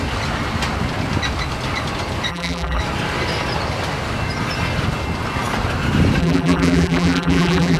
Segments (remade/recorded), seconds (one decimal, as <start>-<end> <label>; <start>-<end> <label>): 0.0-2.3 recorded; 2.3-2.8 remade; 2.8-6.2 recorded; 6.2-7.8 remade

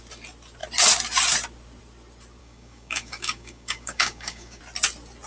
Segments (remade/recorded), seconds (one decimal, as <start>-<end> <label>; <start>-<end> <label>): 0.0-2.4 recorded; 2.4-4.6 remade; 4.6-5.3 recorded

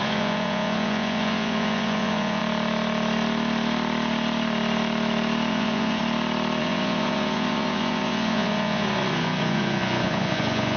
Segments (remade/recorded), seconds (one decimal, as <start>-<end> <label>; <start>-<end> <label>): 0.0-2.4 remade; 2.4-5.5 recorded; 5.5-6.0 remade; 6.0-6.6 recorded; 6.6-10.8 remade

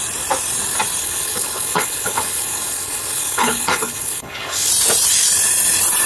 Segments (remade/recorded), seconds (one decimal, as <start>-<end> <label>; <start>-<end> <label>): 0.0-1.0 recorded; 1.0-4.7 remade; 4.7-6.1 recorded

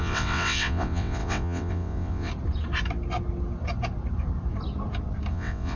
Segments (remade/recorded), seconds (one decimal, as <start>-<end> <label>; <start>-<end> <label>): 0.0-2.3 remade; 2.3-5.3 recorded; 5.3-5.8 remade